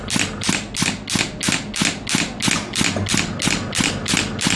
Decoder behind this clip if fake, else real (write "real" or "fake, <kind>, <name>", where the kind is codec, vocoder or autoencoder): real